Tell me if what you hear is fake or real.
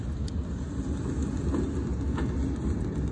real